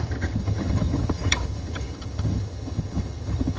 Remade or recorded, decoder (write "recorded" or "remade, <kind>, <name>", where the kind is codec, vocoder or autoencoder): remade, vocoder, HiFi-GAN